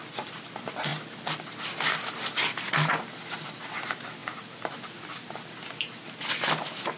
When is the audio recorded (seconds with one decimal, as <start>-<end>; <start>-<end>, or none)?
4.2-5.5